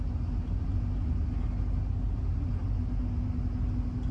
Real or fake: real